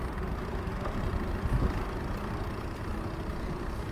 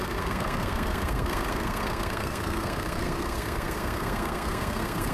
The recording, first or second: first